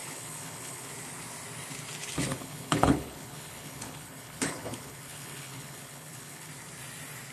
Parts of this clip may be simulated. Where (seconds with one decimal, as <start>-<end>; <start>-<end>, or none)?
0.0-0.9; 2.3-6.5